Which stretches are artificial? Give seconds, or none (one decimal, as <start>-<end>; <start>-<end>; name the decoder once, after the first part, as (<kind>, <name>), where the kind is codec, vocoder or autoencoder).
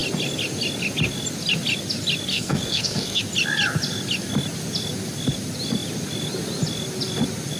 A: 2.3-3.2 (codec, SNAC)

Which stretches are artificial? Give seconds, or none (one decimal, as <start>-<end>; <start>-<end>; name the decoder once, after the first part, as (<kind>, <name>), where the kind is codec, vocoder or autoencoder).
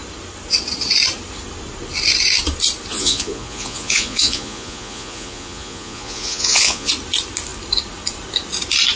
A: 2.9-6.9 (vocoder, Vocos)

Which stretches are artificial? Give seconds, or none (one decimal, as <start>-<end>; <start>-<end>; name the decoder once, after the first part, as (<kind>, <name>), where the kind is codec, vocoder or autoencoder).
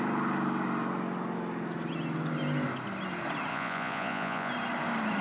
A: 3.5-4.5 (vocoder, Vocos)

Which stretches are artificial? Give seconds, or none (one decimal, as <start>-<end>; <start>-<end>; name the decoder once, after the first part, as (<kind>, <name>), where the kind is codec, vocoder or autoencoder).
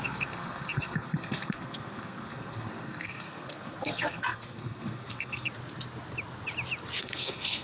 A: 0.0-5.5 (codec, SNAC); 7.0-7.6